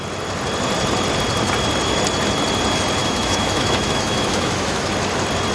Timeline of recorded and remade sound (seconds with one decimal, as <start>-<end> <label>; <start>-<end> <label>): 0.0-3.0 recorded; 3.0-4.9 remade; 4.9-5.5 recorded